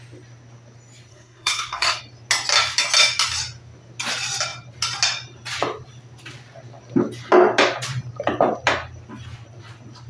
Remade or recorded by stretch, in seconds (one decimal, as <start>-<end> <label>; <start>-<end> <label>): 0.0-1.1 recorded; 1.1-2.0 remade; 2.0-10.1 recorded